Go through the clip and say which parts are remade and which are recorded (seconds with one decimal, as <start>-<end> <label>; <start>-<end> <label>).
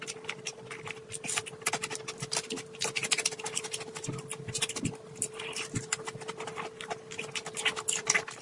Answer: 0.0-8.4 recorded